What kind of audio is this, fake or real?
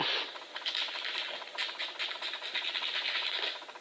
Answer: real